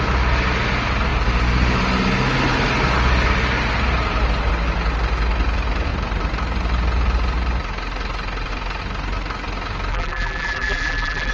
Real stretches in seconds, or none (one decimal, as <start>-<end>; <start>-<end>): 0.0-9.9